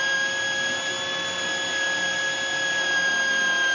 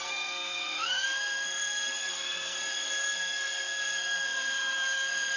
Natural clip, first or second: first